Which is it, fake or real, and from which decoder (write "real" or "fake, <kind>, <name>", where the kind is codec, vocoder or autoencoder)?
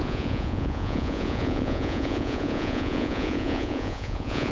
fake, vocoder, Vocos